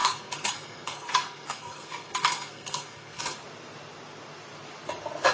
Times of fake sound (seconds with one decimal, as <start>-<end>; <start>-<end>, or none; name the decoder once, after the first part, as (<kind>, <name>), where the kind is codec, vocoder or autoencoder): 0.0-3.2 (codec, SNAC)